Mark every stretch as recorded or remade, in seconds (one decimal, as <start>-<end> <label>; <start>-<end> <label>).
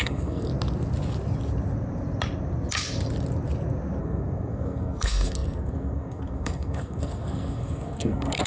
0.0-0.5 remade; 0.5-4.0 recorded; 4.0-8.5 remade